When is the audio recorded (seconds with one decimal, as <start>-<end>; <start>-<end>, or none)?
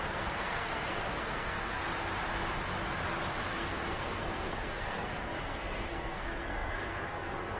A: 1.8-3.5